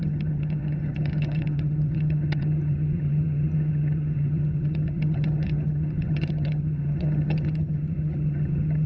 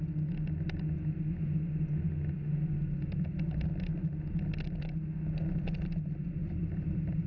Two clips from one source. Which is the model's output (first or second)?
first